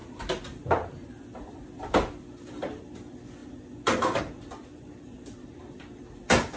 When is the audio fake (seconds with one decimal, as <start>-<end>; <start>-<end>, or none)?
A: 0.0-3.4; 4.2-6.6